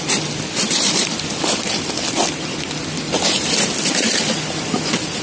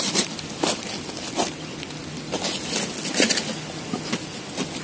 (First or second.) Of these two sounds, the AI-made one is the first